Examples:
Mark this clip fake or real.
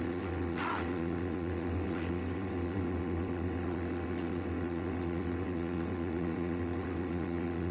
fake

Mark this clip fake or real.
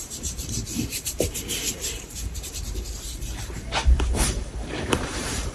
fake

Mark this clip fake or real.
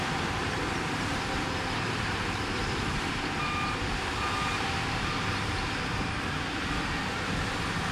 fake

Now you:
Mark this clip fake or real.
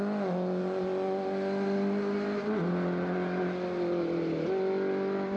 real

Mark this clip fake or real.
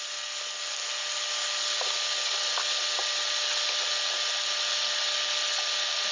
real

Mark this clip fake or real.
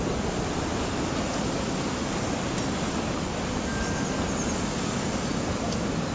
real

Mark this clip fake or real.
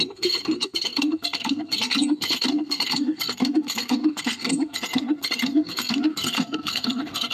fake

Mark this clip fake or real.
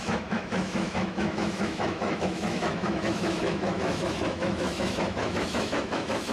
fake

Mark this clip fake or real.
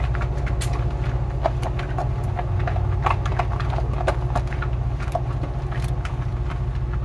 real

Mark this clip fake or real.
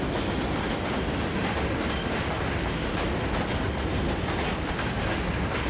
real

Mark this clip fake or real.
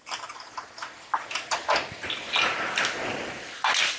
real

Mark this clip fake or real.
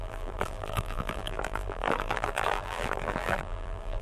fake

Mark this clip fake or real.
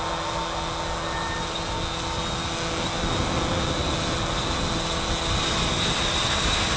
real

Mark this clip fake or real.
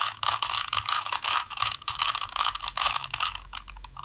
fake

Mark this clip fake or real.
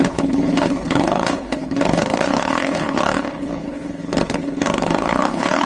fake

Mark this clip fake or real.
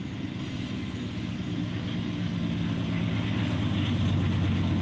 real